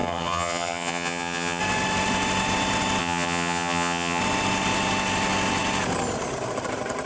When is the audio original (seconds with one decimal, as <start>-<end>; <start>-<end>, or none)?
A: 1.6-3.0; 4.2-7.1